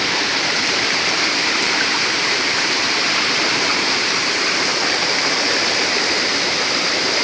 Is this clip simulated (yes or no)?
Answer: yes